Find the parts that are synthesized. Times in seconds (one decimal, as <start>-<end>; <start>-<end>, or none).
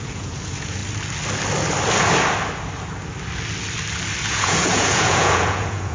0.0-0.8; 4.3-5.9